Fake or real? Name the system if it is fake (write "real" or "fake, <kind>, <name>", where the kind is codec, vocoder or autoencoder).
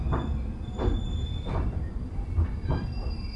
fake, vocoder, BigVGAN v2